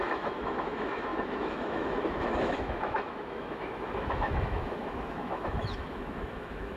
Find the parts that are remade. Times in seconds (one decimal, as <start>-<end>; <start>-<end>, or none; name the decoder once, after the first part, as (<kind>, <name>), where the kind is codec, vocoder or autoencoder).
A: 0.0-6.8 (autoencoder, DAC-VAE)